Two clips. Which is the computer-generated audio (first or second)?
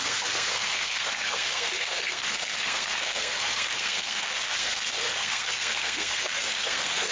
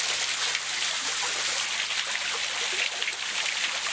first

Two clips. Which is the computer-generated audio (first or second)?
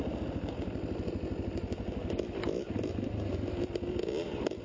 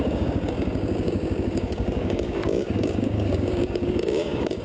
second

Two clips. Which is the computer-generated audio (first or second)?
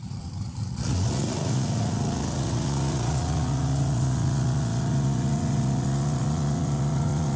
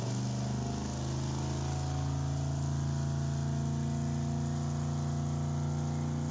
first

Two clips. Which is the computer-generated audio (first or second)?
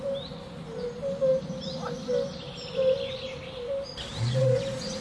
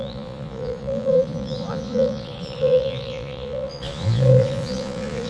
second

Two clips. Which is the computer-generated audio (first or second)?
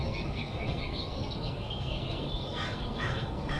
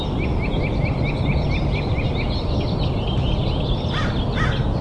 first